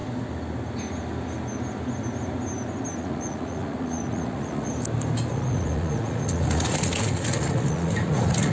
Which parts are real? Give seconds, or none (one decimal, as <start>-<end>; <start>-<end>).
0.0-3.0; 4.7-5.3